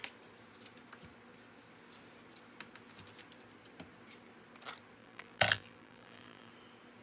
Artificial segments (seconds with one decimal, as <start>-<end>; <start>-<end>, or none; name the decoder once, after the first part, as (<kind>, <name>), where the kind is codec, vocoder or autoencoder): 5.0-6.5 (vocoder, BigVGAN v2)